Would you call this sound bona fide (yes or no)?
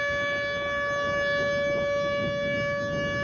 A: yes